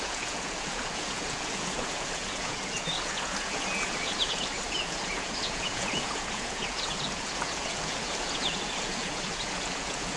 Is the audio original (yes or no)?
no